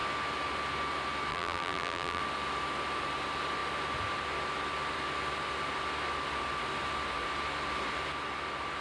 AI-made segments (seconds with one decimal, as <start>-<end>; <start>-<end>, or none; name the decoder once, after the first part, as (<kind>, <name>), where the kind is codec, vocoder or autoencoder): 1.3-2.2 (vocoder, BigVGAN v2)